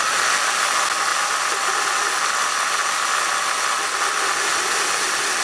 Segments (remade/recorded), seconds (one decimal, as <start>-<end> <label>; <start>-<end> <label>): 0.0-5.4 recorded